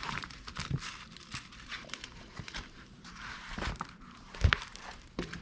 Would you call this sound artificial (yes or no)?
yes